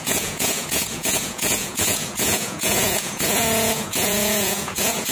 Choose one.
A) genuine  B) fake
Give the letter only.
B